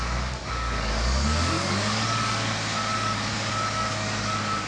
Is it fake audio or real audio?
fake